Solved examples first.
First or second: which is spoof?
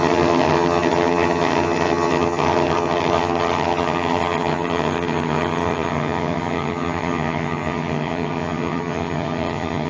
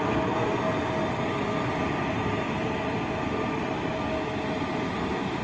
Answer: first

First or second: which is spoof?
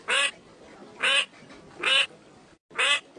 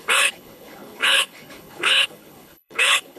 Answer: second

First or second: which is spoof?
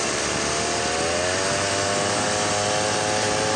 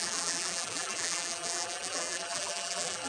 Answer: second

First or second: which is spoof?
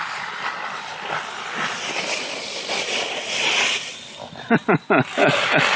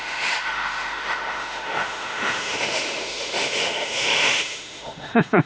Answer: second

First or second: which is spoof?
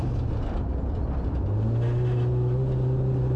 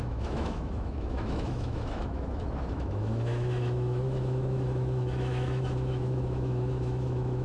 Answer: second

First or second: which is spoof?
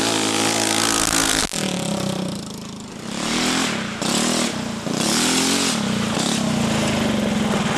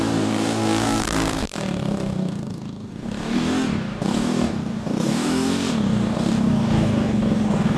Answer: second